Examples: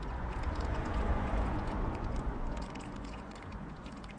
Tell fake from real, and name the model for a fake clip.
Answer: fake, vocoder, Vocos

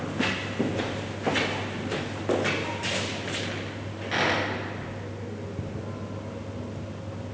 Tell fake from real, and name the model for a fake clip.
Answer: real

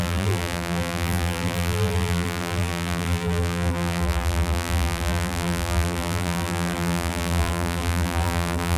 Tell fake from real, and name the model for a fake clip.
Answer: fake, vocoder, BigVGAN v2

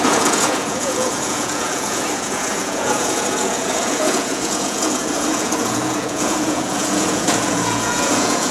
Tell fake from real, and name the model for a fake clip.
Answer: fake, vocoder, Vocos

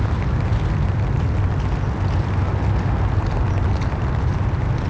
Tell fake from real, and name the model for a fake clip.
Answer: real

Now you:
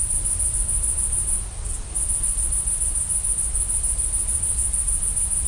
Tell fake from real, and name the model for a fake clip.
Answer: real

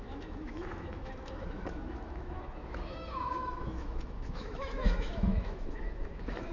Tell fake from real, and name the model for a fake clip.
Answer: fake, autoencoder, DAC-VAE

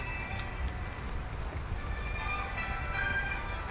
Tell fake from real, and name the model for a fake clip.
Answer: real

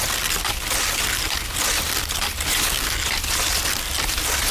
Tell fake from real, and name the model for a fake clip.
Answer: real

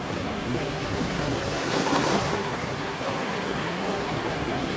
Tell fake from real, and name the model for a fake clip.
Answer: fake, codec, SNAC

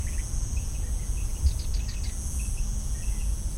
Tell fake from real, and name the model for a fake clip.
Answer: real